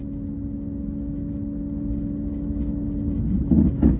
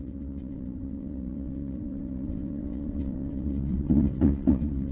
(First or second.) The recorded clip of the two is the first